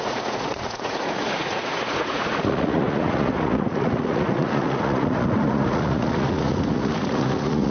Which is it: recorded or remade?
remade